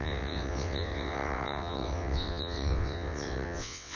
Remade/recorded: remade